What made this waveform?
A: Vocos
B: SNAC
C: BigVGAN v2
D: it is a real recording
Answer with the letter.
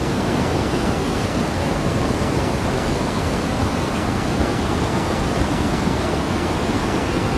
B